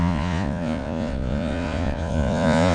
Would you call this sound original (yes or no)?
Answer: no